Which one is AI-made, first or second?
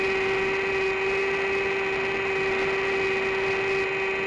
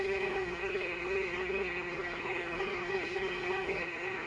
second